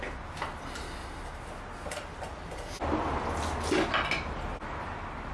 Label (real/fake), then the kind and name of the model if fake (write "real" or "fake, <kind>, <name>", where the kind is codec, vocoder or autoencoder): real